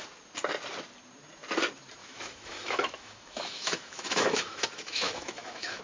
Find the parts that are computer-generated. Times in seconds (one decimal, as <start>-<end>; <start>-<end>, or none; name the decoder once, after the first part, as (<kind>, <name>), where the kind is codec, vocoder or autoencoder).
2.0-5.8 (autoencoder, DAC-VAE)